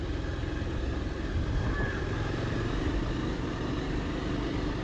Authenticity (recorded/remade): recorded